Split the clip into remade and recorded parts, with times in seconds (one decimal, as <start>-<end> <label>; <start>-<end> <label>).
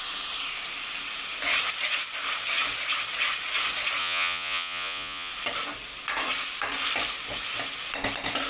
0.0-4.0 recorded; 4.0-5.3 remade; 5.3-8.5 recorded